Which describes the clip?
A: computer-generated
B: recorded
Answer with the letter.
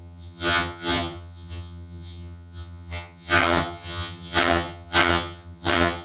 A